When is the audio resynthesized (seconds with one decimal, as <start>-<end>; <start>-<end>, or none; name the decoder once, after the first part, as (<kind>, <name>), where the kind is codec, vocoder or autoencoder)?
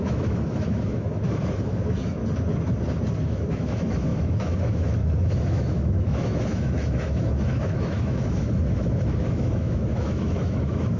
0.0-2.2 (autoencoder, DAC-VAE); 3.2-11.0